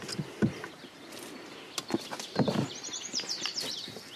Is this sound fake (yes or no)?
no